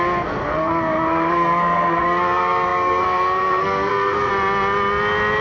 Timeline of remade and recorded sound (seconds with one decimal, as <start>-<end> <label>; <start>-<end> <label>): 0.0-4.3 remade; 4.3-5.4 recorded